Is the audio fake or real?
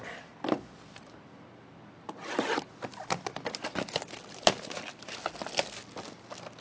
real